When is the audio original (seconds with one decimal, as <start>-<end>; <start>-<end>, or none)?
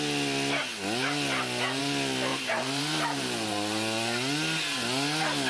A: 0.0-2.3; 3.5-5.5